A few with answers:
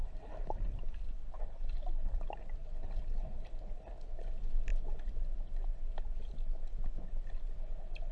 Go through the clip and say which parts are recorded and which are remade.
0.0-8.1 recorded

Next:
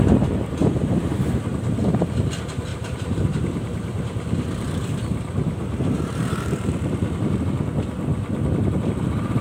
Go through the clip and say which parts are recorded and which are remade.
0.0-0.6 recorded; 0.6-1.5 remade; 1.5-2.7 recorded; 2.7-7.4 remade; 7.4-9.4 recorded